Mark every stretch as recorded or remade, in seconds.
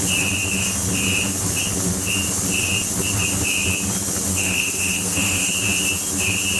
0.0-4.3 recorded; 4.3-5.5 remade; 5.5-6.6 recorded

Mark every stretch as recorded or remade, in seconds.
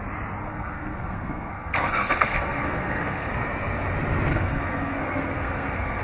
0.0-0.5 recorded; 0.5-3.3 remade; 3.3-4.3 recorded; 4.3-6.0 remade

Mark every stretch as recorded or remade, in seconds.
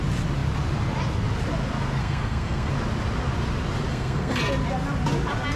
0.0-2.0 recorded; 2.0-2.7 remade; 2.7-3.9 recorded; 3.9-4.4 remade; 4.4-5.6 recorded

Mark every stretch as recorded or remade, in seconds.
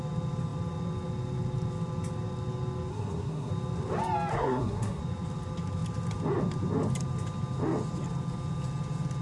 0.0-2.9 recorded; 2.9-3.5 remade; 3.5-4.3 recorded; 4.3-5.0 remade; 5.0-9.2 recorded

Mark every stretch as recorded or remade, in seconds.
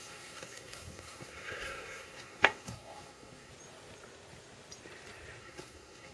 0.0-3.5 remade; 3.5-5.4 recorded; 5.4-6.1 remade